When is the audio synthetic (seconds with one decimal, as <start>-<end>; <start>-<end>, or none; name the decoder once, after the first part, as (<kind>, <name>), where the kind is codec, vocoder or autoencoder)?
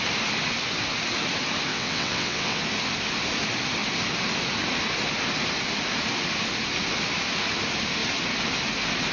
1.7-2.6 (vocoder, WaveNeXt)